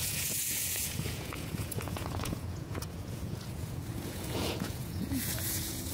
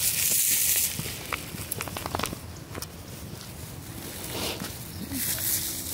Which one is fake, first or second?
first